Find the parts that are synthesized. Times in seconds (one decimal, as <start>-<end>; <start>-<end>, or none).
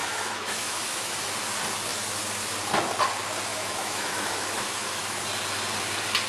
0.0-1.1; 3.5-5.2